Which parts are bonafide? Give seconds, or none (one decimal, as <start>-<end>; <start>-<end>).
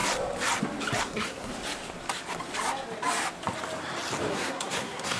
0.0-1.0; 1.5-4.3